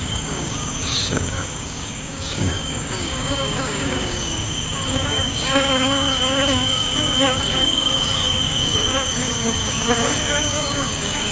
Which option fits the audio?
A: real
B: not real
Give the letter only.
B